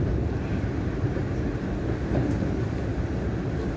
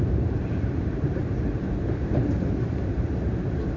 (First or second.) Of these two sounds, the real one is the first